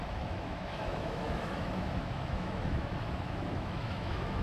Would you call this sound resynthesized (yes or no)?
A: yes